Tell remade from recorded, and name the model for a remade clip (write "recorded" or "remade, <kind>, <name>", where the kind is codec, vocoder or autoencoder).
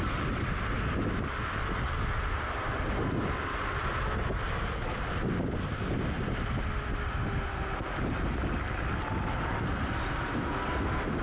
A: recorded